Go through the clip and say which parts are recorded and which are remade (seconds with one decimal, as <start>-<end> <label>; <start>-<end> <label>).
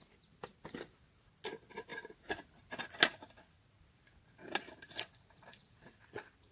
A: 0.0-6.5 recorded